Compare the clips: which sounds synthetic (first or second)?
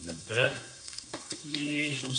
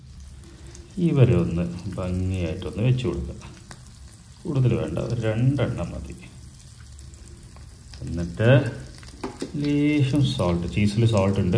first